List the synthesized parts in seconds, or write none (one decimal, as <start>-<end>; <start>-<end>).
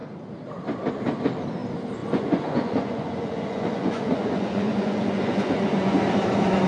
2.0-6.0